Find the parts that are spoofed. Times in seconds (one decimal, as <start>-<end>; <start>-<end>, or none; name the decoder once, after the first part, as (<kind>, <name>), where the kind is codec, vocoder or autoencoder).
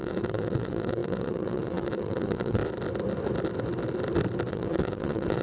0.0-2.6 (vocoder, WaveNeXt); 4.5-5.4